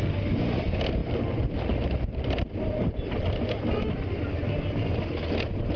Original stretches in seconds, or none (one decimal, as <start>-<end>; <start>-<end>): 0.0-1.0; 3.6-5.8